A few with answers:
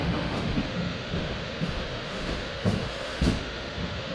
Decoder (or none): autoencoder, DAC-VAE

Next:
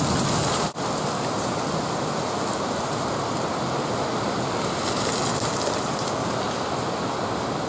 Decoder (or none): none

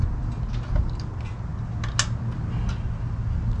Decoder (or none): none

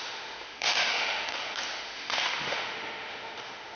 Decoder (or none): autoencoder, DAC-VAE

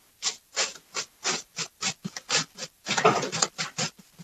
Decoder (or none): none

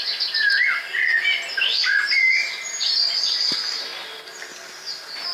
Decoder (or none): none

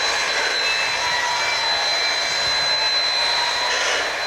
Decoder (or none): none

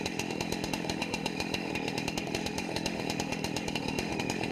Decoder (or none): autoencoder, DAC-VAE